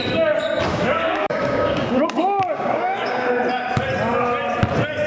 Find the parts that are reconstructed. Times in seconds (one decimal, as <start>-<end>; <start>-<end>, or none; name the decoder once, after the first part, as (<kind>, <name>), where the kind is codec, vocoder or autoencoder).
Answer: 0.7-3.3 (codec, DAC)